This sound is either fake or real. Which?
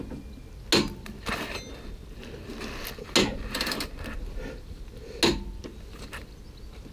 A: real